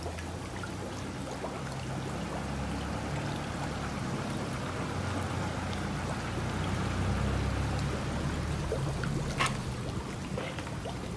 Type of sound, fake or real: real